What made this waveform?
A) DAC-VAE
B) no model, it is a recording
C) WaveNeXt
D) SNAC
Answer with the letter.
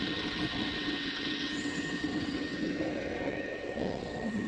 C